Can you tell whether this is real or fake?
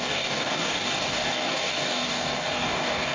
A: fake